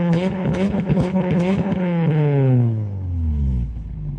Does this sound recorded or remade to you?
remade